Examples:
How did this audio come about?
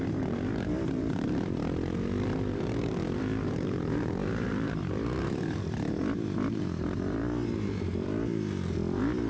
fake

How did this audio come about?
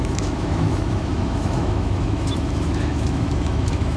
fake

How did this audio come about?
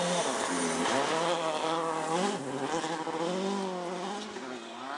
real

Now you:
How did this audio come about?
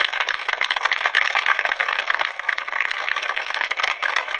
fake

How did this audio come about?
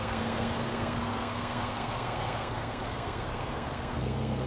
fake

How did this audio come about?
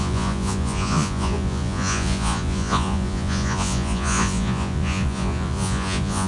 fake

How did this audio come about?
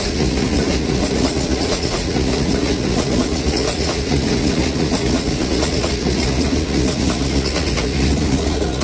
fake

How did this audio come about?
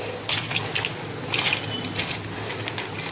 real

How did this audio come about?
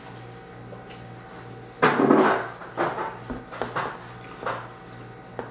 real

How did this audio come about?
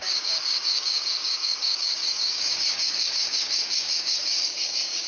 fake